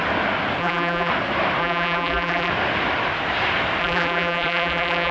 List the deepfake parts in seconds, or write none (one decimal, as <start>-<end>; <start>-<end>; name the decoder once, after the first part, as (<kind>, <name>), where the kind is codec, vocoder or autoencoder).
0.6-1.1 (vocoder, BigVGAN v2); 1.6-2.5; 3.8-5.1